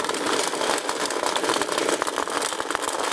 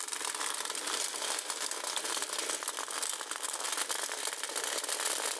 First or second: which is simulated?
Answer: first